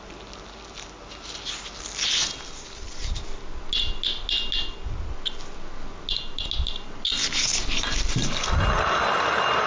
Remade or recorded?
recorded